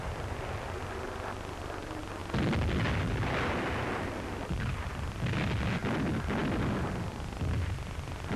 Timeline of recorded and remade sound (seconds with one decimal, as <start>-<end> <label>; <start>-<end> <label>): 0.0-8.4 recorded